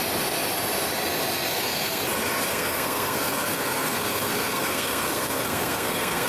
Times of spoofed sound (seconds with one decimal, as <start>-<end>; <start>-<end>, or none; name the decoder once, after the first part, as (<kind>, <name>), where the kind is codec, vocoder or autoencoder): 1.5-2.0 (codec, SNAC); 2.5-6.3